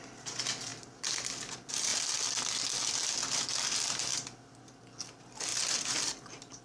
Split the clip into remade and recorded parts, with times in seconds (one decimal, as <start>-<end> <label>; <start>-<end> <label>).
0.0-6.6 recorded